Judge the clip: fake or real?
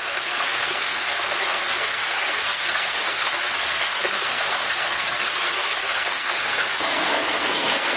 fake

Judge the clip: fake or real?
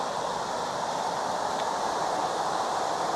real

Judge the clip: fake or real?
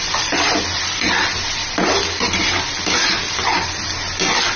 real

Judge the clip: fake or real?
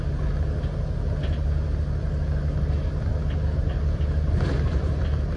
real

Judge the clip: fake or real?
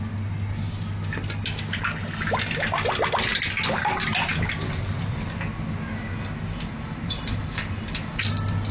real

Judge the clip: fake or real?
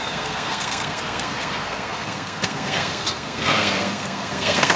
fake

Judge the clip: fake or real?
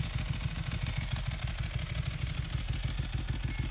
real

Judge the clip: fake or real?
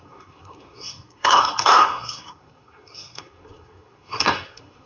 fake